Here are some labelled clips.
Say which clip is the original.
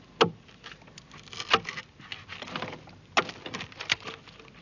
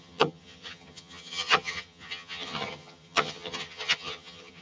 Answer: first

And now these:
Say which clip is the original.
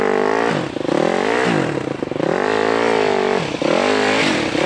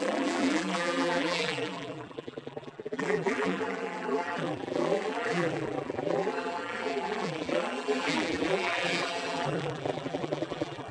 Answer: first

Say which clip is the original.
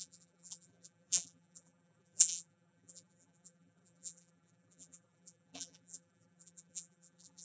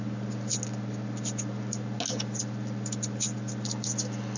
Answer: second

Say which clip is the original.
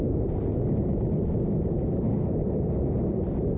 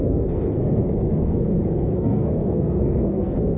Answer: first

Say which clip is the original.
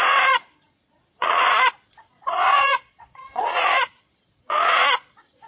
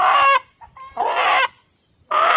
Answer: second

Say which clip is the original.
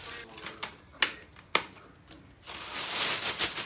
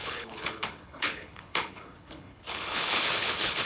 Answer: first